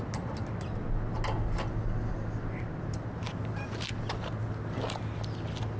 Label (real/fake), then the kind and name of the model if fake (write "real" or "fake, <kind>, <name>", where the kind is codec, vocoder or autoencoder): real